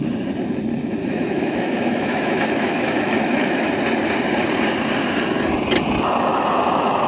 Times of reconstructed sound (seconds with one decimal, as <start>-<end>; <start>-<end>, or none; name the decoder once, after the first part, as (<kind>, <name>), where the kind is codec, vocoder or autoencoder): 1.0-3.7 (autoencoder, DAC-VAE); 6.3-7.1